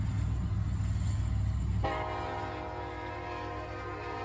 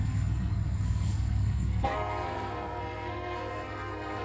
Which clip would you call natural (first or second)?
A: first